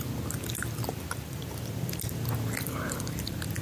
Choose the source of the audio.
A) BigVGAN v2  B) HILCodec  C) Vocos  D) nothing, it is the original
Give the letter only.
D